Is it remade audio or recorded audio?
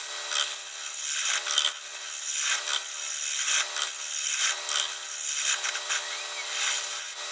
recorded